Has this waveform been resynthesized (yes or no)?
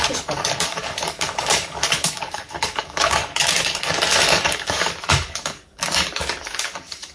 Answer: yes